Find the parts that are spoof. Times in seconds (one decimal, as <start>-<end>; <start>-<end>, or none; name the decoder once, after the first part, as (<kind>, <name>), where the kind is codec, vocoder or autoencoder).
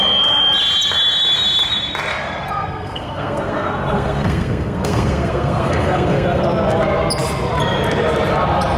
2.1-6.4 (codec, SNAC)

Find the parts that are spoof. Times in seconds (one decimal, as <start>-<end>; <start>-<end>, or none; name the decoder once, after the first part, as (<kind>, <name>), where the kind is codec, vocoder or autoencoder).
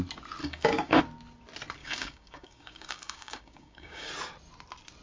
0.4-1.0 (codec, DAC); 1.8-4.1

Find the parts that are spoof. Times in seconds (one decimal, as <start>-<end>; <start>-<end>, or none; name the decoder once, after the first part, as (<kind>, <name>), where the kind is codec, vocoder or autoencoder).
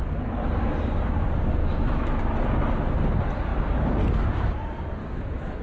1.6-2.2 (autoencoder, DAC-VAE); 5.0-5.6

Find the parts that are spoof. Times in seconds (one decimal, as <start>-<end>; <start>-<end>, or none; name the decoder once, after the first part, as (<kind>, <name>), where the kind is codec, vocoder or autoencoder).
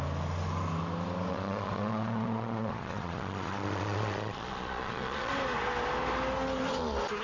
1.3-5.3 (vocoder, Vocos)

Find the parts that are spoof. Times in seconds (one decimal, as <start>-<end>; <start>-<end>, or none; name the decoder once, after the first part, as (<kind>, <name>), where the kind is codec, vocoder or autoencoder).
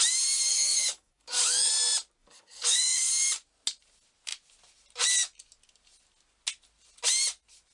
0.5-1.7 (codec, DAC); 2.2-3.0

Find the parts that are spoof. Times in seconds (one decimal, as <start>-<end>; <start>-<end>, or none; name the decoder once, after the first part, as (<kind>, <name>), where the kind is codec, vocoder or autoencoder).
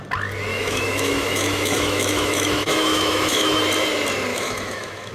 0.5-3.6 (autoencoder, DAC-VAE); 4.3-5.1